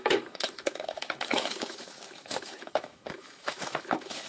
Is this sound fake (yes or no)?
yes